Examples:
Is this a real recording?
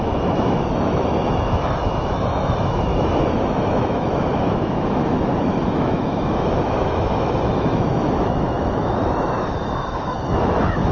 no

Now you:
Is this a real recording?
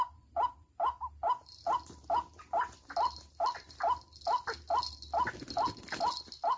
yes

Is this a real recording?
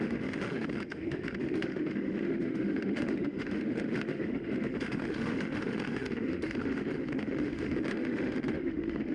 no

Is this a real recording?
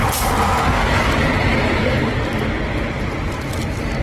yes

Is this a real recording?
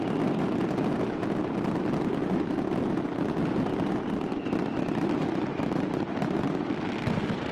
yes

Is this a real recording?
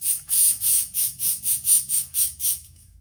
no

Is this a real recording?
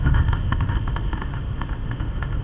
no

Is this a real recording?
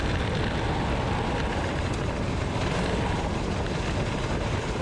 yes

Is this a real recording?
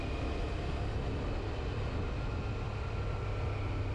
yes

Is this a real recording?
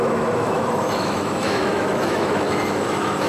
no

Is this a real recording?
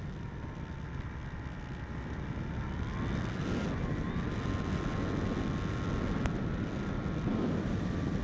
yes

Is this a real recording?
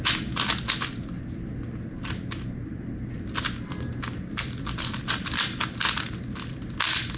yes